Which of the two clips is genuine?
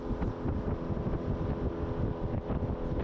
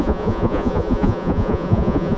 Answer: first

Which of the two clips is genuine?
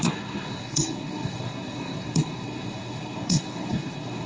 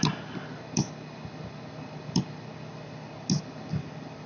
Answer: second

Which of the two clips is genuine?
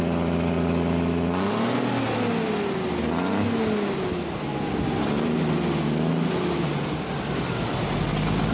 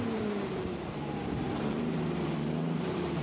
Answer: first